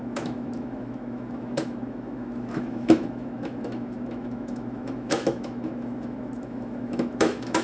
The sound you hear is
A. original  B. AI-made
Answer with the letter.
B